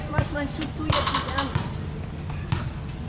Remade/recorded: remade